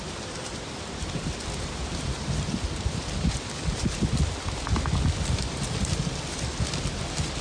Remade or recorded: recorded